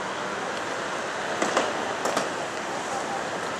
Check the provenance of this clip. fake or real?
real